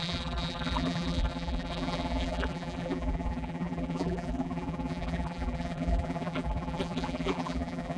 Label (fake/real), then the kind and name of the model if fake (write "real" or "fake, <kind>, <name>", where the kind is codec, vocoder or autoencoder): fake, vocoder, BigVGAN v2